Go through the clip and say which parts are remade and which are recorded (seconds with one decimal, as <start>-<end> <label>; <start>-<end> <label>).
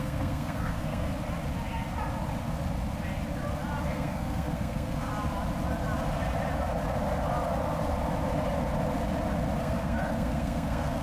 0.0-1.1 remade; 1.1-3.8 recorded; 3.8-5.1 remade; 5.1-9.6 recorded; 9.6-11.0 remade